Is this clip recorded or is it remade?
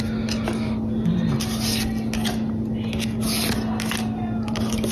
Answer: recorded